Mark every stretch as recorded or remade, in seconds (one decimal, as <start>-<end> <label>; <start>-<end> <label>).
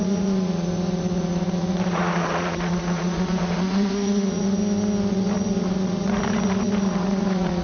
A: 0.0-4.6 remade; 4.6-5.1 recorded; 5.1-7.6 remade